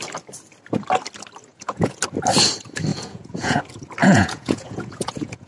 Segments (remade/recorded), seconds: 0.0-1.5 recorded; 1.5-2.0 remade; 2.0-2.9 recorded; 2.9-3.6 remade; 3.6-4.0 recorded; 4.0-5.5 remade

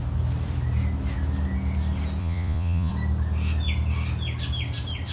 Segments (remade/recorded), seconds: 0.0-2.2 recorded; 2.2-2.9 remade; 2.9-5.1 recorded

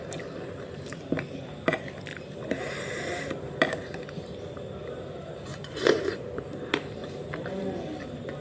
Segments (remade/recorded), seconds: 0.0-5.5 recorded; 5.5-6.2 remade; 6.2-8.4 recorded

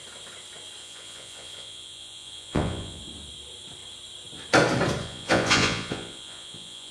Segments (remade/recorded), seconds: 0.0-0.8 recorded; 0.8-3.0 remade; 3.0-5.0 recorded; 5.0-6.9 remade

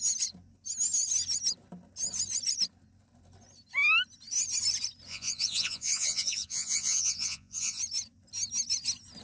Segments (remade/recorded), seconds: 0.0-5.1 recorded; 5.1-7.8 remade; 7.8-9.2 recorded

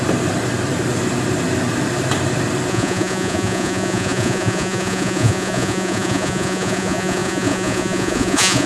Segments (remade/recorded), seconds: 0.0-2.7 recorded; 2.7-8.7 remade

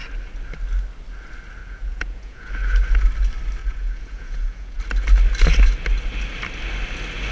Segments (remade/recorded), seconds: 0.0-1.6 recorded; 1.6-2.5 remade; 2.5-3.6 recorded; 3.6-4.8 remade; 4.8-7.3 recorded

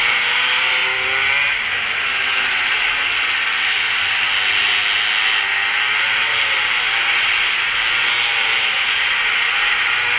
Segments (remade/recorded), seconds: 0.0-10.2 recorded